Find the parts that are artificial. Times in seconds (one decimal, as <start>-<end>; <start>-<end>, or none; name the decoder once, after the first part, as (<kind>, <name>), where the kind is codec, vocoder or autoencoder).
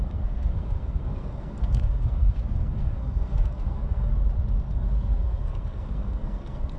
0.0-4.1 (codec, SNAC); 4.7-6.8